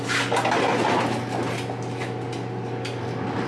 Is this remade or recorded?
recorded